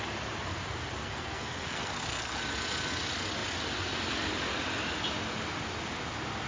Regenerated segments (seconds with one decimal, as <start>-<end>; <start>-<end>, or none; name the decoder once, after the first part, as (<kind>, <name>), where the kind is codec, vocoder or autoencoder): 1.0-2.4 (codec, SNAC)